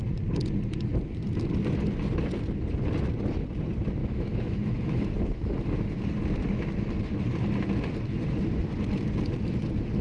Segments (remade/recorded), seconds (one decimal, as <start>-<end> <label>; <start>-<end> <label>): 0.0-4.0 recorded; 4.0-6.0 remade; 6.0-10.0 recorded